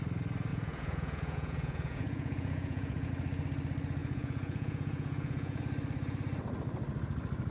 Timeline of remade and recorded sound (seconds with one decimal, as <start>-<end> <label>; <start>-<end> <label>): 0.0-0.5 recorded; 0.5-3.1 remade; 3.1-4.0 recorded; 4.0-5.6 remade; 5.6-7.5 recorded